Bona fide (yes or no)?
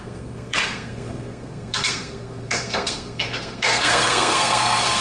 no